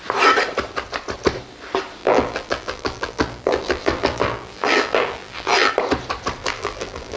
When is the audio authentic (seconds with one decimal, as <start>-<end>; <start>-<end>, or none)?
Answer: 0.0-2.0; 5.7-6.4